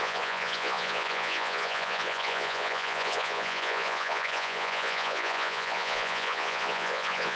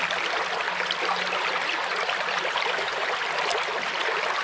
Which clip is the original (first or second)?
second